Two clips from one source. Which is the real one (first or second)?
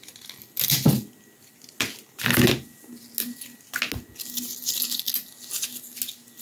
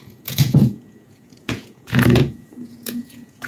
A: first